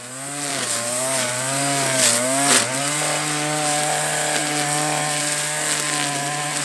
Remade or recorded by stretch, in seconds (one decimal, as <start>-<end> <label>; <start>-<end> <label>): 0.0-0.5 recorded; 0.5-1.3 remade; 1.3-6.6 recorded